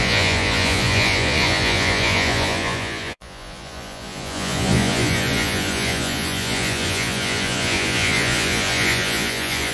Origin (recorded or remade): remade